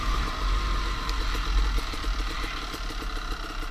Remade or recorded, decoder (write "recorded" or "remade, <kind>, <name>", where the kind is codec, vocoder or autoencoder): recorded